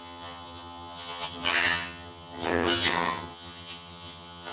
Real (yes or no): no